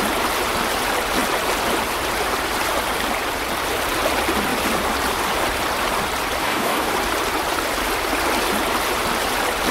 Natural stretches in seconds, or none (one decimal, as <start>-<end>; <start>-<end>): 0.0-6.4; 6.9-9.7